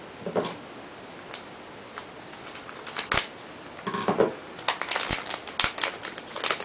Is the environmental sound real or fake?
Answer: real